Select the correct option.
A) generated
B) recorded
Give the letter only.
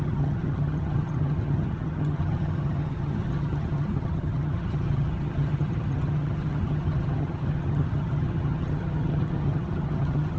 A